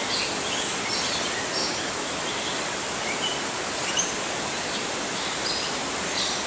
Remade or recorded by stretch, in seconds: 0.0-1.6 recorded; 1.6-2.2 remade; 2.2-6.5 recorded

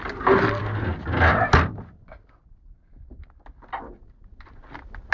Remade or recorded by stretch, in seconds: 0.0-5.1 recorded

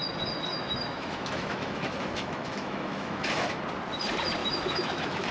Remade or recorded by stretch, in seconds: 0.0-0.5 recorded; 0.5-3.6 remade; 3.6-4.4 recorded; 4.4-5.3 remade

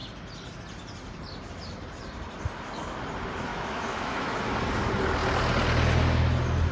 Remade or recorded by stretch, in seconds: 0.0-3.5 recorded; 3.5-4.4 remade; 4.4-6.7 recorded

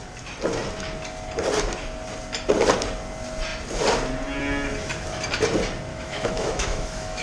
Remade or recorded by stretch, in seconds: 0.0-5.9 recorded; 5.9-7.2 remade